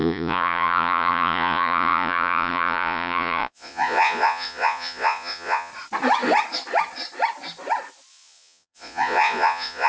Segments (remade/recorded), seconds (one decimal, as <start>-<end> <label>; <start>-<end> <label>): 0.0-5.7 remade; 5.7-8.1 recorded; 8.1-9.9 remade